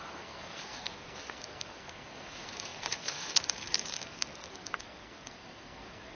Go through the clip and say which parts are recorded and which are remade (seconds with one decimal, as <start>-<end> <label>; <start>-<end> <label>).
0.0-6.2 remade